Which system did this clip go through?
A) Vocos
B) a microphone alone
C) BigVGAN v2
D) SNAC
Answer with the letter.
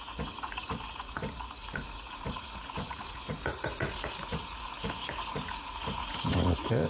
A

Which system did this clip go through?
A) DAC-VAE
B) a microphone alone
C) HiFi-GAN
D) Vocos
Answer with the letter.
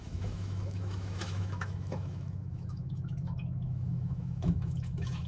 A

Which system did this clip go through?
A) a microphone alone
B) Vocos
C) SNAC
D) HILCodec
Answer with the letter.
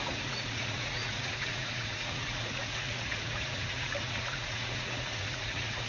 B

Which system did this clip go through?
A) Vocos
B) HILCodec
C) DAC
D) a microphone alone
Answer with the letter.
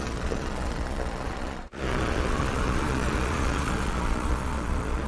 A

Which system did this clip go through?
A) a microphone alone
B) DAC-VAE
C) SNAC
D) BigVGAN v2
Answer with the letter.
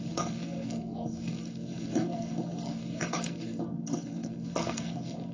C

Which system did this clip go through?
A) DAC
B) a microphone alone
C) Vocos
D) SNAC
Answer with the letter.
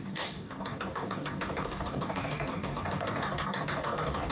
A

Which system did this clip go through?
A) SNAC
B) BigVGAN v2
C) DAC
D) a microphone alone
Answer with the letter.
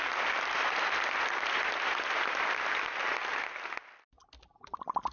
B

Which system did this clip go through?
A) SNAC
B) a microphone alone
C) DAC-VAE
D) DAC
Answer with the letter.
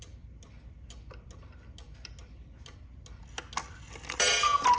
B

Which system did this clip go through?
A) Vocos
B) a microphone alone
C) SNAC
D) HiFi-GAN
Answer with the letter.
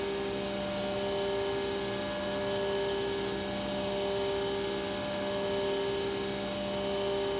B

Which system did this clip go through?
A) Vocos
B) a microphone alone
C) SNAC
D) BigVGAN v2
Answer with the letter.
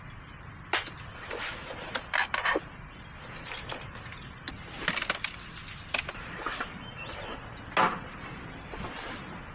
B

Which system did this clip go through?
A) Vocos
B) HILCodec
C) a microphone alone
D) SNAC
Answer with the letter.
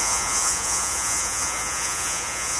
A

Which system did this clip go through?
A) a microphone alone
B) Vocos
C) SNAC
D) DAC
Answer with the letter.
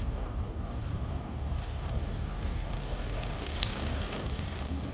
D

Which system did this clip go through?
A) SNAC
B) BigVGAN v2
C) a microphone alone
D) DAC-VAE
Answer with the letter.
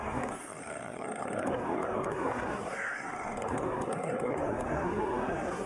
A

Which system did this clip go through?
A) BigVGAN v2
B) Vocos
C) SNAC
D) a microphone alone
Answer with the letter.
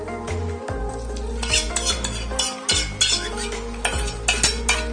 D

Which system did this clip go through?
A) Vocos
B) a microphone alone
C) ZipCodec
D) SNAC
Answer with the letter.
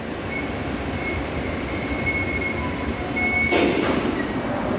B